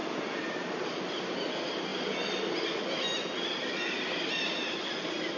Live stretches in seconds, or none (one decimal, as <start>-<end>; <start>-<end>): 0.0-5.4